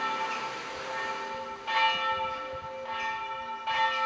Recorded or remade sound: recorded